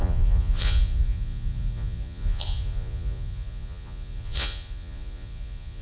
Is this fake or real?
fake